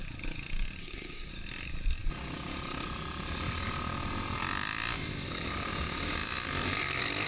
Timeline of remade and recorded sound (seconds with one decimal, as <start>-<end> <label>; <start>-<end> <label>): 0.0-0.8 recorded; 0.8-1.3 remade; 1.3-7.3 recorded